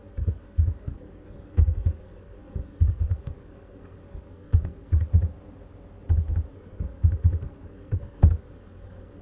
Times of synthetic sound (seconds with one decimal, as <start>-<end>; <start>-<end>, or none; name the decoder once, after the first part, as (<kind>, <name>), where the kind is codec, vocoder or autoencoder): 0.0-5.1 (codec, SNAC); 6.5-9.2